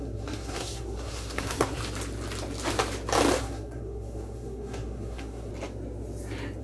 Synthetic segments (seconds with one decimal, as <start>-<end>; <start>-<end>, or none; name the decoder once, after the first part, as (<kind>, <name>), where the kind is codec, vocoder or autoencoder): 0.0-1.8 (codec, SNAC); 3.4-5.5